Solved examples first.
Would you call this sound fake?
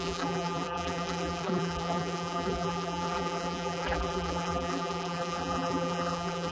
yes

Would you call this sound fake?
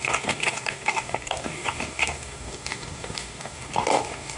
yes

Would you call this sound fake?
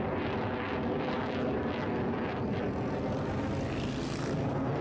no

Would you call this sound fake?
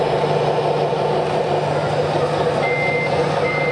no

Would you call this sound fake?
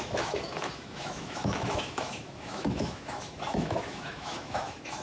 yes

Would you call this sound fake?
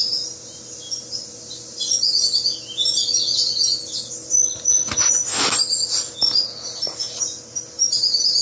no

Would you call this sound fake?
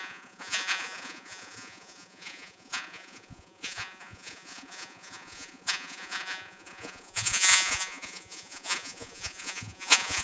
yes